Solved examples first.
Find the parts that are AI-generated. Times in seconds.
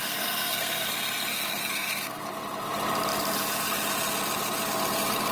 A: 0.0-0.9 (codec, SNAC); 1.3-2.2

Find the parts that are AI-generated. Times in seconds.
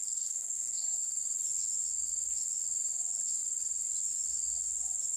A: 0.0-1.2 (codec, SNAC)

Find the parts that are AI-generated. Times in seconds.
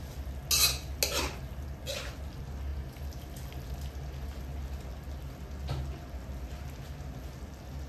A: none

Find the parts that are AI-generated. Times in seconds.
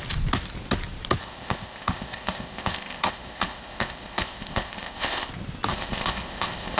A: 1.2-5.3 (codec, ZipCodec); 5.7-6.8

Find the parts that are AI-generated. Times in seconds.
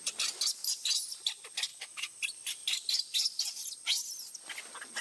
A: 1.7-2.2 (autoencoder, DAC-VAE)